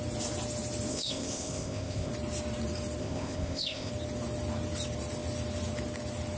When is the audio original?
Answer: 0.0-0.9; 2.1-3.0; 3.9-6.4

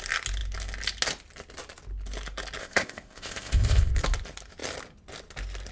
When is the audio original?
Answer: 0.0-2.6; 3.9-5.7

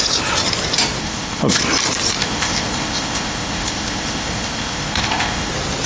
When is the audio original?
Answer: 0.0-1.0; 1.6-2.2; 5.5-5.9

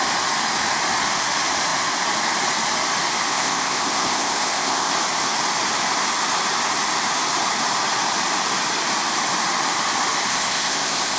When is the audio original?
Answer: 0.0-3.3; 4.9-10.3

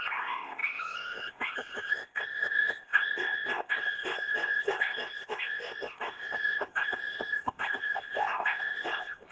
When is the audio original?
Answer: none